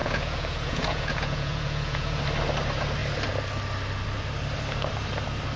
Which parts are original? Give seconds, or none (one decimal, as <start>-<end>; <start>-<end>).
2.2-5.6